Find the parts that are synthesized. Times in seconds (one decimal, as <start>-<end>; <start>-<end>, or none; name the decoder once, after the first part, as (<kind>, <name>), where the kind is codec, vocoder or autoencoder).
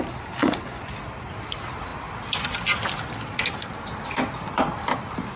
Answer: 0.4-0.9 (vocoder, Vocos)